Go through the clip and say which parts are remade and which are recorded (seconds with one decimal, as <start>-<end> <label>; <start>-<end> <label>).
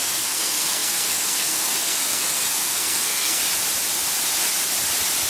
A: 0.0-3.4 remade; 3.4-5.3 recorded